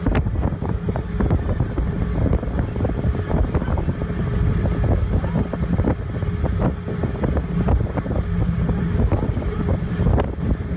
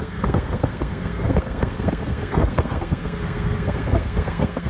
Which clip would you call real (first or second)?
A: first